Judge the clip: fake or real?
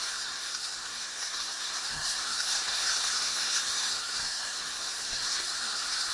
fake